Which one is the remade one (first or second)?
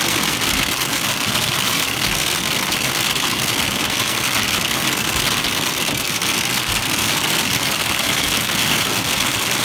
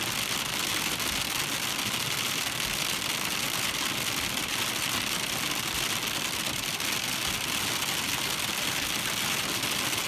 first